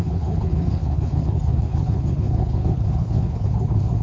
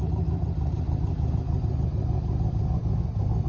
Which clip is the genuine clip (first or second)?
second